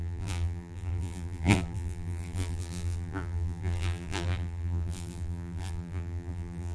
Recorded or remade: remade